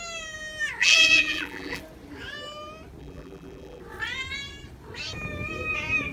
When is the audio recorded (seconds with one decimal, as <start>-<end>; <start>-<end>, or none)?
0.0-0.8; 1.8-3.0; 3.8-6.1